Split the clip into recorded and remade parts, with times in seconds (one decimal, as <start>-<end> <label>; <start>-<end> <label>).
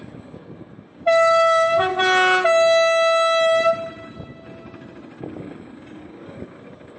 0.0-1.9 remade; 1.9-5.2 recorded; 5.2-7.0 remade